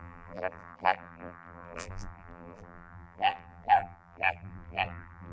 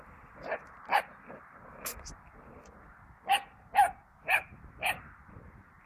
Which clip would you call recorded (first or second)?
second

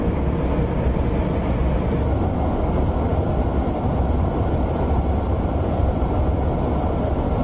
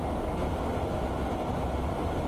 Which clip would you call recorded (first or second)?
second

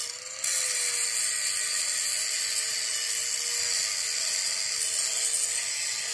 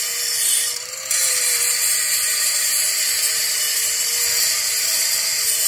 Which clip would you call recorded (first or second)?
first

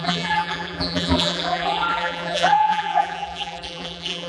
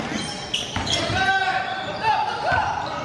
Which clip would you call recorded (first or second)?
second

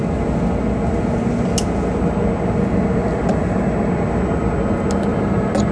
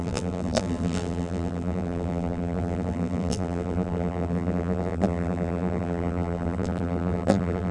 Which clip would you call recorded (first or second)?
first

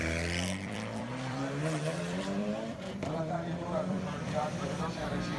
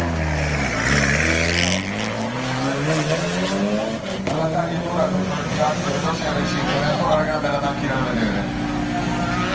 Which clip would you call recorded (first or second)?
second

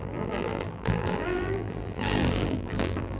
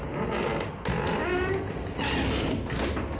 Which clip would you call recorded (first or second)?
second